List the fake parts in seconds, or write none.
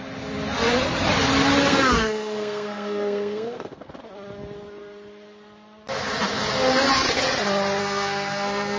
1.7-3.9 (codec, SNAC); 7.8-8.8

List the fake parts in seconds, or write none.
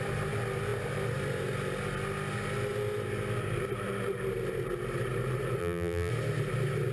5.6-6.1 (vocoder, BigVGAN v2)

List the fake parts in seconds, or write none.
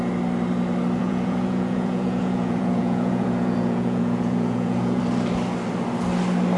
1.0-5.0 (vocoder, Vocos)